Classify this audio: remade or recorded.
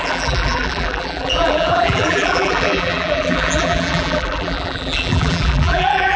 remade